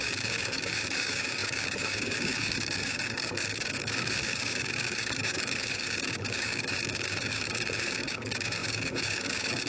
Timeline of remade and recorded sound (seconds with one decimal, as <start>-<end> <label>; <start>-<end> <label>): 0.0-9.7 remade